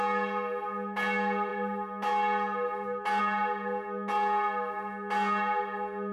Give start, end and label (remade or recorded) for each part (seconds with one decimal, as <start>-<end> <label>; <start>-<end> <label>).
0.0-6.1 recorded

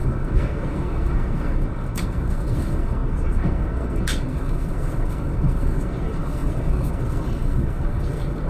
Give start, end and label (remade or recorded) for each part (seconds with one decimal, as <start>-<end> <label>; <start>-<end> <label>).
0.0-8.5 remade

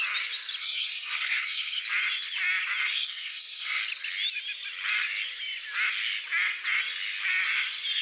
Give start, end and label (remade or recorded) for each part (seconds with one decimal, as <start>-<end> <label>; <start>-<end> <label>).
0.0-0.6 recorded; 0.6-1.8 remade; 1.8-2.9 recorded; 2.9-3.8 remade; 3.8-8.0 recorded

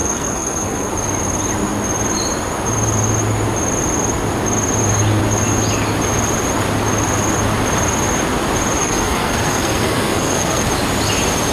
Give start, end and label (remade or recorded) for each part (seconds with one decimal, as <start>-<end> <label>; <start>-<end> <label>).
0.0-0.9 remade; 0.9-8.8 recorded; 8.8-10.7 remade; 10.7-11.5 recorded